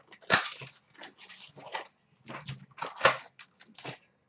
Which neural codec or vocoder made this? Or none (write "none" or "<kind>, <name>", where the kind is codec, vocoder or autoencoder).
none